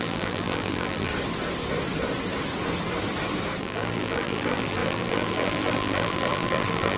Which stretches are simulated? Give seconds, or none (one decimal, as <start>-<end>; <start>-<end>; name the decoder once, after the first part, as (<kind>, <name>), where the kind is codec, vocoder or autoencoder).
0.0-1.1 (vocoder, BigVGAN v2); 3.6-7.0